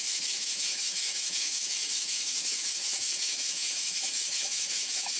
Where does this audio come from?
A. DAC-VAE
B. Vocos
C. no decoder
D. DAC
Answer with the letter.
A